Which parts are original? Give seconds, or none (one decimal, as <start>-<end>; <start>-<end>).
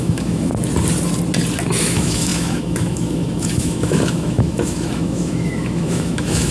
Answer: 0.5-1.8